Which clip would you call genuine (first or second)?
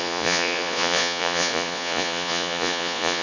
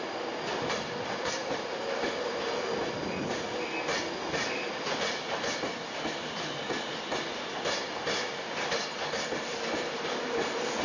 second